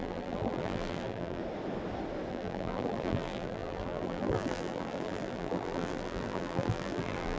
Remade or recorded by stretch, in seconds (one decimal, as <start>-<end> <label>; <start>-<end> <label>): 0.0-1.4 remade; 1.4-2.3 recorded; 2.3-7.4 remade